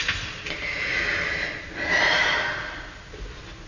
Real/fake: real